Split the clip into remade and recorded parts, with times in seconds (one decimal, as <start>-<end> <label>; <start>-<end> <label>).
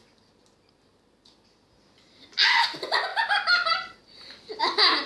0.0-3.1 recorded; 3.1-4.6 remade; 4.6-5.1 recorded